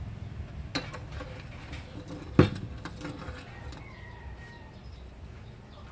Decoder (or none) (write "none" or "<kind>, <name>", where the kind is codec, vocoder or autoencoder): none